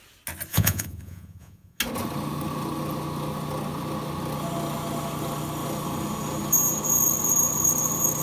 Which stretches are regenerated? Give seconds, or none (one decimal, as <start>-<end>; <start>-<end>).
0.5-1.8